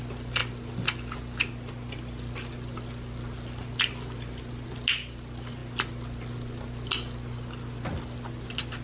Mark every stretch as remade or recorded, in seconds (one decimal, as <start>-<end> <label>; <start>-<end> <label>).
0.0-8.8 recorded